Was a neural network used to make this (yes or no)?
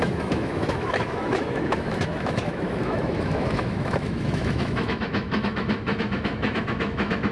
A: yes